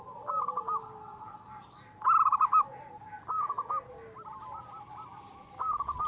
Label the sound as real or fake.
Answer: real